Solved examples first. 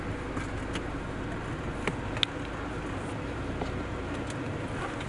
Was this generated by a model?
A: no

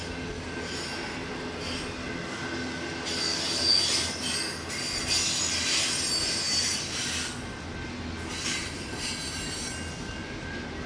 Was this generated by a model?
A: no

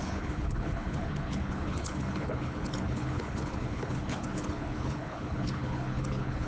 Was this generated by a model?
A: yes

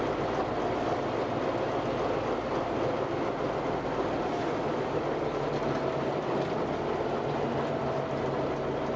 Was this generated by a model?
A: no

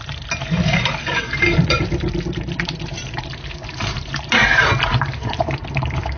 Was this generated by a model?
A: yes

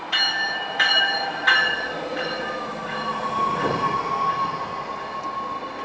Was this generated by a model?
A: no